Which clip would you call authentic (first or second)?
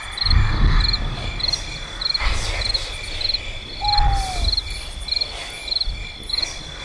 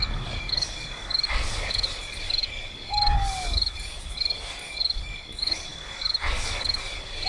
first